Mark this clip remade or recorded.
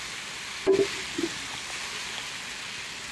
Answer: recorded